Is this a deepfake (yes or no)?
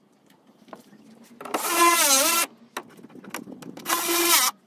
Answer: no